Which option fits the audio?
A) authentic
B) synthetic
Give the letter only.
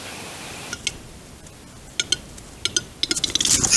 A